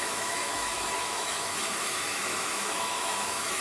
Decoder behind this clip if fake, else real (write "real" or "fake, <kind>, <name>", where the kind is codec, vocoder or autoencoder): fake, autoencoder, DAC-VAE